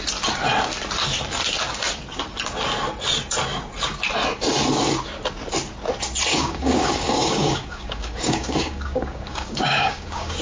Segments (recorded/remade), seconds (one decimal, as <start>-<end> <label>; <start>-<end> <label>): 0.0-6.3 recorded; 6.3-10.4 remade